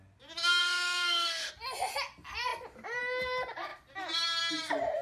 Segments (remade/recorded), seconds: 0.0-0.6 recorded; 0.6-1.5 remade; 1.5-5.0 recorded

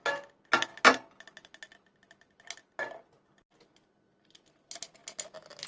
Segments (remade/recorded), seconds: 0.0-5.7 recorded

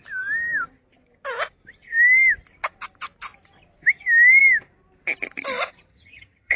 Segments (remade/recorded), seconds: 0.0-5.9 recorded; 5.9-6.6 remade

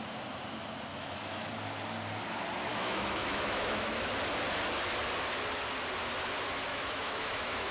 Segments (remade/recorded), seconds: 0.0-0.9 recorded; 0.9-1.5 remade; 1.5-2.7 recorded; 2.7-4.1 remade; 4.1-6.7 recorded; 6.7-7.7 remade

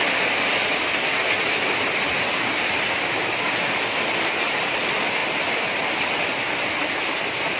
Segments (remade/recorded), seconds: 0.0-7.6 recorded

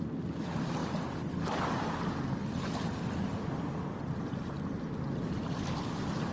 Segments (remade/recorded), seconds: 0.0-6.3 recorded

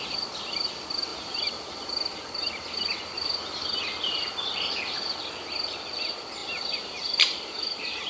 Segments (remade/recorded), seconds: 0.0-1.1 recorded; 1.1-2.2 remade; 2.2-6.4 recorded; 6.4-8.1 remade

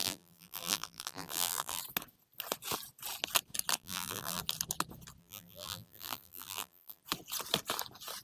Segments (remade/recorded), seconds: 0.0-1.8 remade; 1.8-3.8 recorded; 3.8-4.4 remade; 4.4-5.2 recorded; 5.2-7.0 remade; 7.0-8.2 recorded